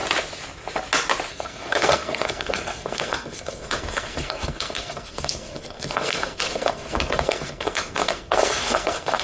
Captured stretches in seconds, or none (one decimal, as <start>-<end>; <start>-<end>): 0.0-1.3